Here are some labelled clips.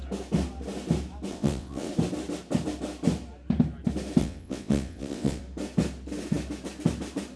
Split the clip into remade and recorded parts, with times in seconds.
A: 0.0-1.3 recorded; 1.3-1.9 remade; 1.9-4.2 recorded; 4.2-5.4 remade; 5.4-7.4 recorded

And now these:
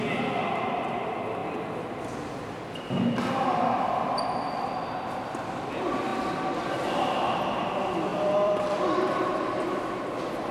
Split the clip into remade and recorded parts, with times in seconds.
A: 0.0-1.4 recorded; 1.4-2.0 remade; 2.0-3.5 recorded; 3.5-4.1 remade; 4.1-6.1 recorded; 6.1-7.7 remade; 7.7-8.1 recorded; 8.1-10.5 remade

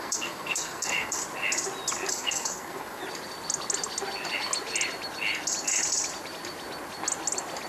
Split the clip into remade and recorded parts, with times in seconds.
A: 0.0-1.2 remade; 1.2-2.1 recorded; 2.1-3.0 remade; 3.0-7.7 recorded

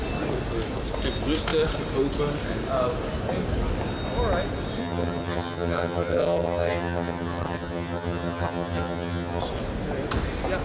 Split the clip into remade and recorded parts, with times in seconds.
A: 0.0-4.8 recorded; 4.8-9.4 remade; 9.4-10.6 recorded

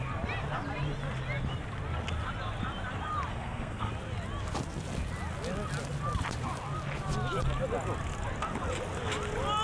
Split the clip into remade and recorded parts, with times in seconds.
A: 0.0-3.3 recorded; 3.3-3.9 remade; 3.9-9.6 recorded

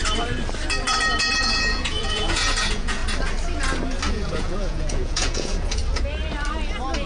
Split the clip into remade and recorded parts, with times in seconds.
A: 0.0-1.4 recorded; 1.4-3.0 remade; 3.0-4.1 recorded; 4.1-5.8 remade; 5.8-7.1 recorded